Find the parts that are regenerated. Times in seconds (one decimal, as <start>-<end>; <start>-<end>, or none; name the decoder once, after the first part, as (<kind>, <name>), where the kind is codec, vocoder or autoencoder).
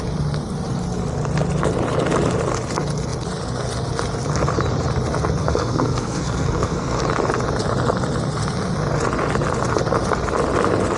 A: 5.4-7.0 (codec, SNAC)